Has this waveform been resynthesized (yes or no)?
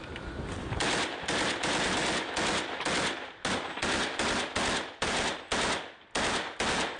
no